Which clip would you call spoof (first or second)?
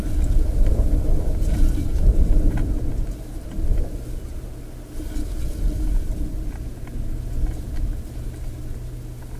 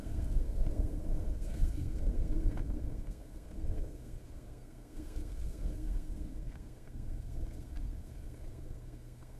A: second